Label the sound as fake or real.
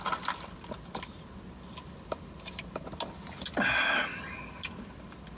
real